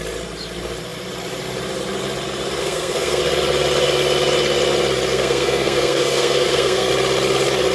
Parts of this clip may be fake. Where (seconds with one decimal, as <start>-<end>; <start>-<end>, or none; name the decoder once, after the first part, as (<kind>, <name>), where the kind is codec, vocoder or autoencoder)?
2.6-3.2 (codec, SNAC); 5.1-6.9